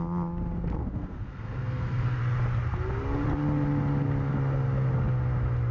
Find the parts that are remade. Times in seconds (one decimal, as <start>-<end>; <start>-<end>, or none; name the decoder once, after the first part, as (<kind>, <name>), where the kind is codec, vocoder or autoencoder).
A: 0.8-2.2 (codec, SNAC)